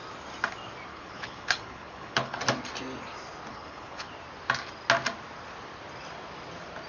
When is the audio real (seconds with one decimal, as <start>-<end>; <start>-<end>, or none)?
0.0-0.9; 2.4-3.5; 4.1-6.9